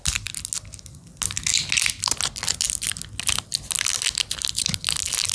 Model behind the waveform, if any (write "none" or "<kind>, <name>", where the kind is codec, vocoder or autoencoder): none